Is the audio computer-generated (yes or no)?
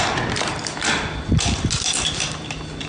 no